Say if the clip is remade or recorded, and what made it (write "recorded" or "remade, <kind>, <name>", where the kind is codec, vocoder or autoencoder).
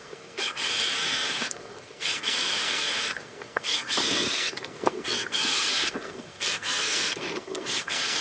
remade, codec, SNAC